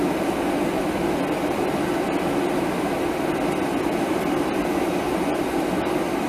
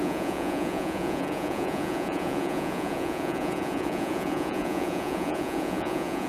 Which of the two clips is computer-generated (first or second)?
second